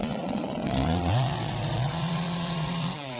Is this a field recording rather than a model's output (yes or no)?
no